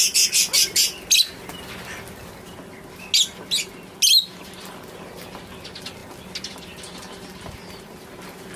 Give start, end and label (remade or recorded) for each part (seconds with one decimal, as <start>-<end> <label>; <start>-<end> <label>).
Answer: 0.0-8.6 recorded